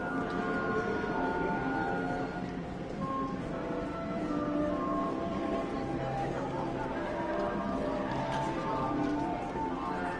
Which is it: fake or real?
fake